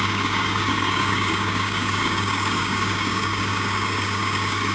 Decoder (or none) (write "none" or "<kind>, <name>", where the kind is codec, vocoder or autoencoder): codec, DAC